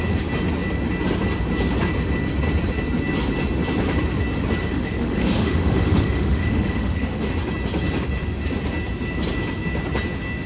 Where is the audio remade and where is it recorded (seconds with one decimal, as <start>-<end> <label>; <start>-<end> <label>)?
0.0-4.6 recorded; 4.6-7.3 remade; 7.3-10.5 recorded